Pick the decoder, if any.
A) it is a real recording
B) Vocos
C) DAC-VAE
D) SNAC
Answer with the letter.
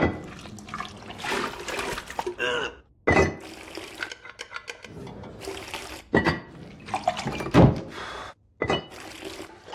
A